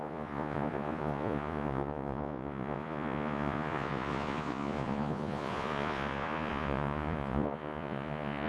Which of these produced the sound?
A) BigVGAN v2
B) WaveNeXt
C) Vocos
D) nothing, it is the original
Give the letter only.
C